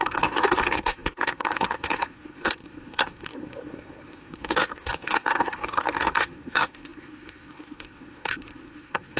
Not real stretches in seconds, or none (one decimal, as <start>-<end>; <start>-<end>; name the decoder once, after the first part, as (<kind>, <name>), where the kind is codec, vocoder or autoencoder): 0.0-9.2 (codec, SNAC)